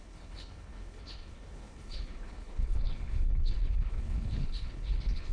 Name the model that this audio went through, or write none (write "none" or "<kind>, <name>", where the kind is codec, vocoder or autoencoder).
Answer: codec, HILCodec